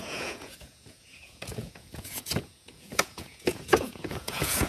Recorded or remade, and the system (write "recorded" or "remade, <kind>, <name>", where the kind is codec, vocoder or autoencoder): remade, vocoder, Vocos